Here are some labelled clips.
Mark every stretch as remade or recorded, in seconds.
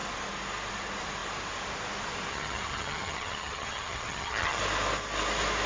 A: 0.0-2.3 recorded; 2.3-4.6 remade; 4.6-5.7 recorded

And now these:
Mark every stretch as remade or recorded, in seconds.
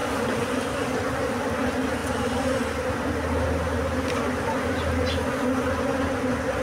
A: 0.0-6.6 recorded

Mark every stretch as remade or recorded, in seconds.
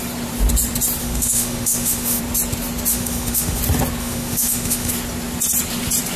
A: 0.0-1.0 recorded; 1.0-2.2 remade; 2.2-2.9 recorded; 2.9-3.6 remade; 3.6-4.0 recorded; 4.0-4.9 remade; 4.9-6.2 recorded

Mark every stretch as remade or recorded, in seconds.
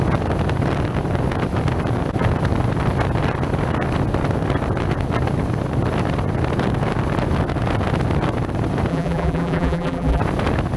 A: 0.0-8.9 recorded; 8.9-10.2 remade; 10.2-10.8 recorded